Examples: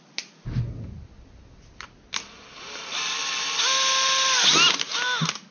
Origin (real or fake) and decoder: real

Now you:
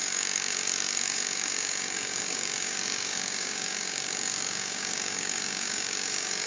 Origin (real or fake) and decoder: fake, codec, DAC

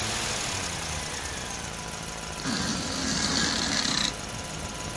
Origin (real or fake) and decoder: real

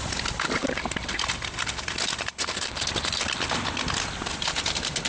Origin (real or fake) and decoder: real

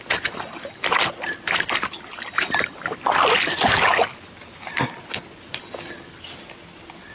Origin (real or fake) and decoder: real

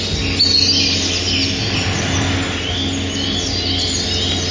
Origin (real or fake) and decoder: real